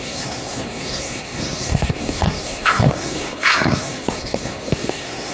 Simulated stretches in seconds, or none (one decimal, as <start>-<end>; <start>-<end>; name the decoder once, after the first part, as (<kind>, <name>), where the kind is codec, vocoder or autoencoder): 0.0-5.3 (codec, SNAC)